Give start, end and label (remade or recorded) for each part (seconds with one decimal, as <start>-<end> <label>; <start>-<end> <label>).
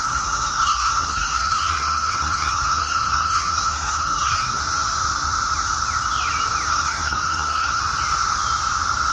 0.0-4.6 remade; 4.6-6.7 recorded; 6.7-7.8 remade; 7.8-9.1 recorded